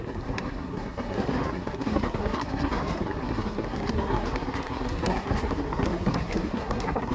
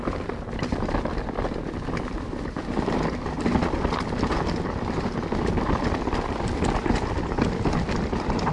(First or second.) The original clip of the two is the second